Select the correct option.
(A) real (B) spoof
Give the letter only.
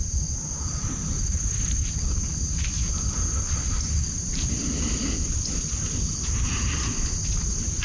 A